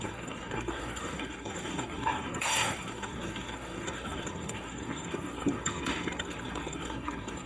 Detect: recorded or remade remade